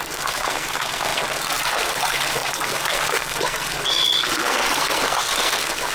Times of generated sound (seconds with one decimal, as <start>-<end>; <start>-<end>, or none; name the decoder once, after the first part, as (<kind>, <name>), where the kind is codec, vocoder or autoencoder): 0.0-5.9 (codec, SNAC)